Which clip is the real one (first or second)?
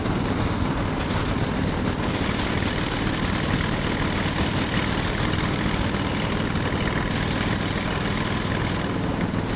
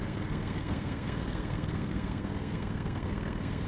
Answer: first